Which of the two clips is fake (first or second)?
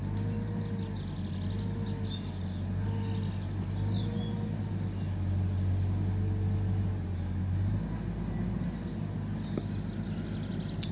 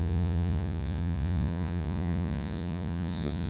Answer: second